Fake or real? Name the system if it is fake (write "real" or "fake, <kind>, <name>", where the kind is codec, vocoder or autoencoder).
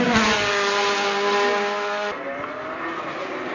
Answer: real